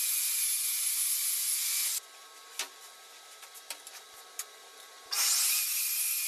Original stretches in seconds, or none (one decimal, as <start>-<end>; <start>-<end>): 0.0-1.4; 5.2-6.3

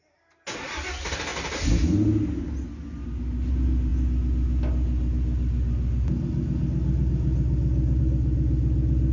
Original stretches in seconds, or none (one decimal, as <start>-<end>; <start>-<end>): 0.0-9.1

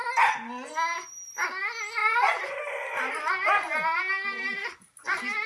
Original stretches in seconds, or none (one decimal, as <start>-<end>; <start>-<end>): 0.0-2.0

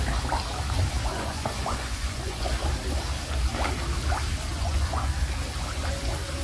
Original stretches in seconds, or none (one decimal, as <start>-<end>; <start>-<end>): 0.0-1.1; 2.5-4.5; 5.1-6.4

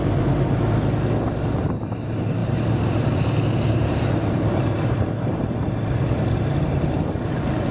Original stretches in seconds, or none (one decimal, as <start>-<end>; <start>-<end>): 0.0-2.4; 7.0-7.7

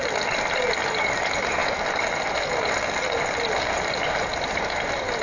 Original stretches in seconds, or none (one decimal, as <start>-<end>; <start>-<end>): 0.0-5.2

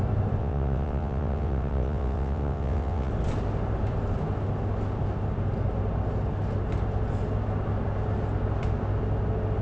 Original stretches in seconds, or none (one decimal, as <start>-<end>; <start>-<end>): 0.0-0.4; 3.1-9.6

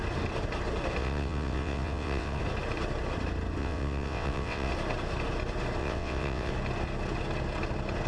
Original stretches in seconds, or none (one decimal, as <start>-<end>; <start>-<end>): 0.0-1.0; 2.4-3.6; 4.7-5.8; 6.5-8.1